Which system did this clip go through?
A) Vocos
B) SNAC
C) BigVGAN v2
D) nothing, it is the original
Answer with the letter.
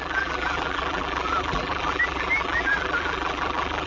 C